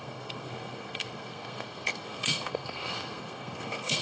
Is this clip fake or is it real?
fake